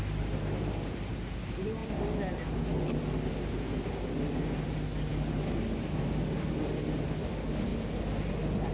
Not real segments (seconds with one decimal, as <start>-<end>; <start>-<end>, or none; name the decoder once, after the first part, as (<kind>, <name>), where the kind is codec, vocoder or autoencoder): none